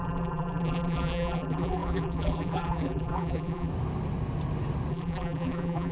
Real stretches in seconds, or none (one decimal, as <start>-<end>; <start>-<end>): 3.7-4.9